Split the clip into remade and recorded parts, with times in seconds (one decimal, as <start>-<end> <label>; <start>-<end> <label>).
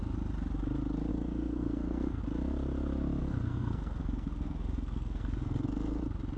0.0-1.1 recorded; 1.1-2.2 remade; 2.2-3.2 recorded; 3.2-6.0 remade; 6.0-6.4 recorded